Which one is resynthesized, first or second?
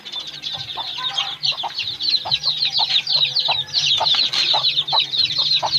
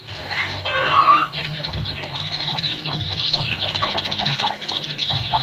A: second